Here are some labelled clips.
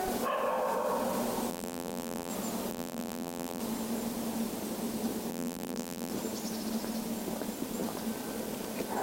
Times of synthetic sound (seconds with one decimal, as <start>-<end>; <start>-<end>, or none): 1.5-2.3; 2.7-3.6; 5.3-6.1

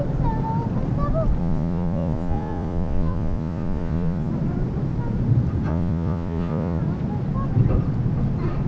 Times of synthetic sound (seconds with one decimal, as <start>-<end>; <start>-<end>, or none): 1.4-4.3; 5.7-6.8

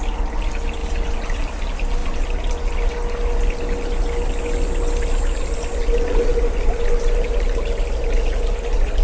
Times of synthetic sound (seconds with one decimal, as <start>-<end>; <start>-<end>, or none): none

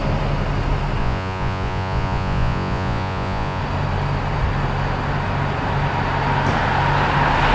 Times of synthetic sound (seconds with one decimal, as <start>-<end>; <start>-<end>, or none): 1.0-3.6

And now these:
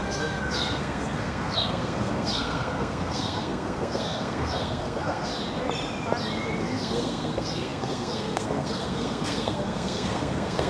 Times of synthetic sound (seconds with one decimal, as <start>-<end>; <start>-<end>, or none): 0.0-5.3; 6.6-10.7

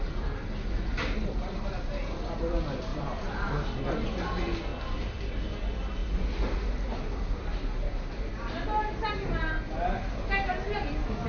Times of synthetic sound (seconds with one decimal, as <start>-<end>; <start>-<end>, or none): 0.9-1.9; 2.9-3.8; 4.7-5.3

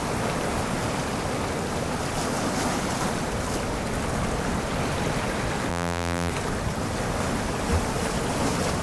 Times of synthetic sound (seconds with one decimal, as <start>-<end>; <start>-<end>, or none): 5.7-6.3